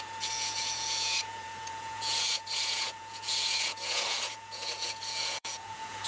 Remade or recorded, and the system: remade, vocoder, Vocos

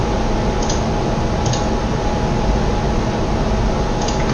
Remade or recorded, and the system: recorded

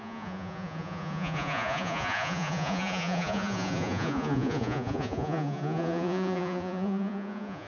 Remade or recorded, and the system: remade, vocoder, Vocos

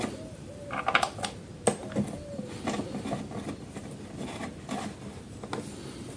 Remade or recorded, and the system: recorded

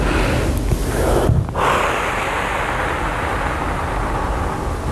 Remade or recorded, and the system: recorded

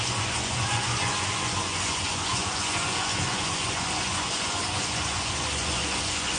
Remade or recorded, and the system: remade, vocoder, Vocos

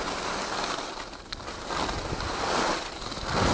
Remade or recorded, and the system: recorded